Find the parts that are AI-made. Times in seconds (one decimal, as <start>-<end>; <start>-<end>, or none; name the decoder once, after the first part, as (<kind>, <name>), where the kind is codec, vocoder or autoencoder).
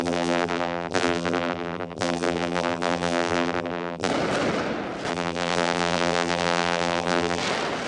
0.0-4.1 (vocoder, BigVGAN v2); 5.1-7.4